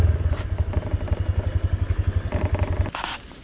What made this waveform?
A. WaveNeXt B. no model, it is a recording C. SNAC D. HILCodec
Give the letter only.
B